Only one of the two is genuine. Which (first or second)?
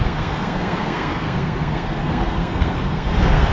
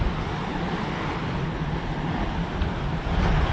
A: second